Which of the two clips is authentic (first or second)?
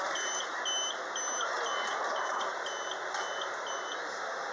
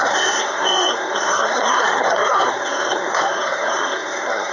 first